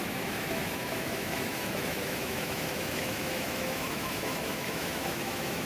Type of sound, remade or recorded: remade